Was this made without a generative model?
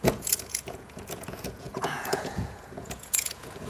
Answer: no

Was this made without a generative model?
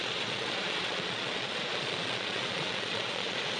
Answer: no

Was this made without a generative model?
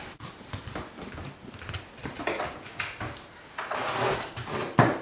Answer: yes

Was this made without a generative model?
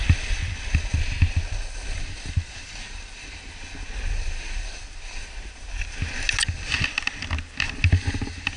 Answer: yes